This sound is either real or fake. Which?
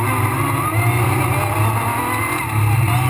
real